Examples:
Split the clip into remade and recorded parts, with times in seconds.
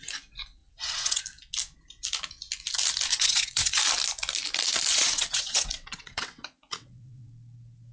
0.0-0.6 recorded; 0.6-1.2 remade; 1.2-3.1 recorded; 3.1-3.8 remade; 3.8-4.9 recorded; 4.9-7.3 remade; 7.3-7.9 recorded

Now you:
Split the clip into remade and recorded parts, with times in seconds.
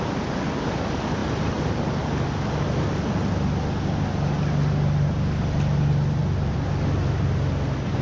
0.0-8.0 recorded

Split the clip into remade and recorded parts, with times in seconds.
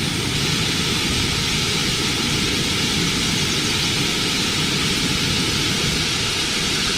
0.0-7.0 recorded